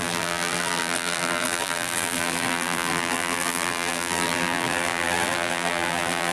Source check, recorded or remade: remade